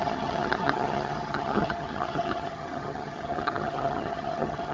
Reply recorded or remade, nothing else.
remade